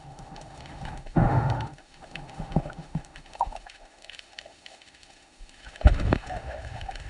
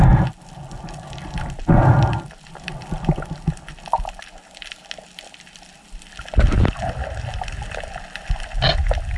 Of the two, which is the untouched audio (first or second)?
second